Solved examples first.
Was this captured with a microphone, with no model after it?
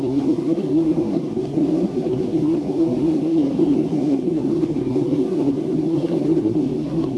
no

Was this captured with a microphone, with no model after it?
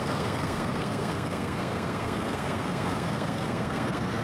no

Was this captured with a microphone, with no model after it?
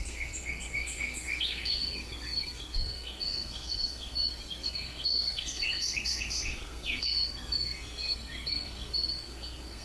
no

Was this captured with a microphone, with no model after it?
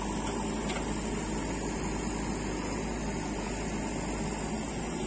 yes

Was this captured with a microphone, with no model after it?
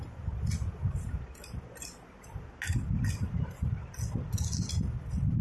yes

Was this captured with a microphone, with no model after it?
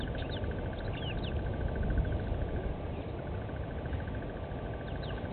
yes